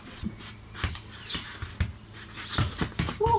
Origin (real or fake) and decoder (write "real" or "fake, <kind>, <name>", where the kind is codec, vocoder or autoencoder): real